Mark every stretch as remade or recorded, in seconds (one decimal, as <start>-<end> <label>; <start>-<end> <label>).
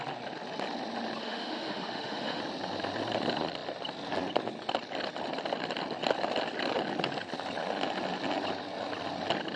0.0-1.2 recorded; 1.2-2.4 remade; 2.4-9.6 recorded